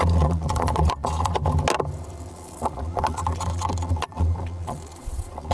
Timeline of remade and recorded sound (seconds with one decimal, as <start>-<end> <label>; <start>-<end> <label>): 0.0-1.4 remade; 1.4-2.3 recorded; 2.3-5.5 remade